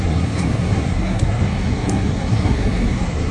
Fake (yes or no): yes